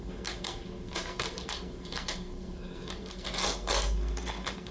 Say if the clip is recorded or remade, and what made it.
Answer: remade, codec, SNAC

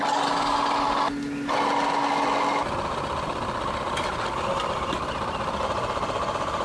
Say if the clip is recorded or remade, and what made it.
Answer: recorded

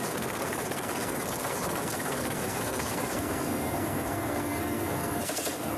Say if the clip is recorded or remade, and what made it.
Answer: remade, codec, SNAC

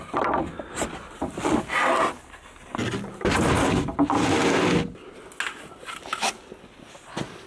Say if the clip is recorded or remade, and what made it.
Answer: recorded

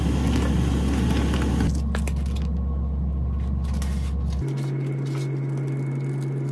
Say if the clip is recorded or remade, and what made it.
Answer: recorded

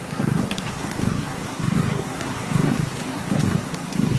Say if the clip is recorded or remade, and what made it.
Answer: remade, codec, SNAC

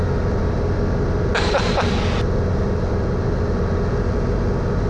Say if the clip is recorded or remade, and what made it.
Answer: recorded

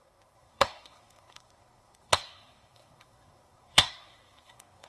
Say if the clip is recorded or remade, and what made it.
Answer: remade, codec, SNAC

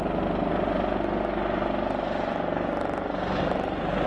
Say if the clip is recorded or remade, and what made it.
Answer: recorded